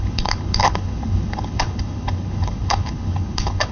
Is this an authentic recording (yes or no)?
no